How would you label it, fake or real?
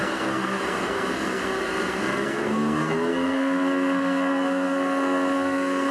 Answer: fake